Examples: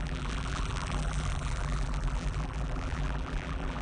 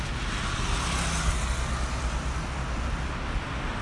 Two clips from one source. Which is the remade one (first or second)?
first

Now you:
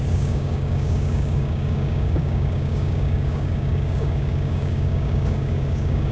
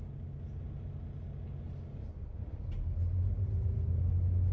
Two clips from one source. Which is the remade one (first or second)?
first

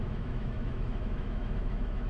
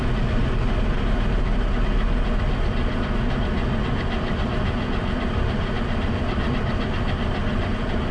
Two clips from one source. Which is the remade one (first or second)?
first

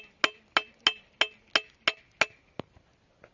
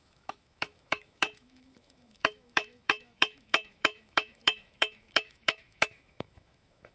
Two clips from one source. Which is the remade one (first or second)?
second